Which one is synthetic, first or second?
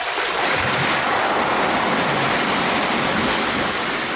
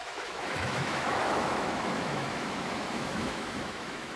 second